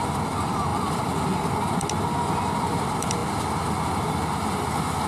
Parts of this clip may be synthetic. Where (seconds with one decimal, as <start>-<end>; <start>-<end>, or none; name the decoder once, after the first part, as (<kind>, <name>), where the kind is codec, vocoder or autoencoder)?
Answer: 0.7-2.7 (vocoder, BigVGAN v2)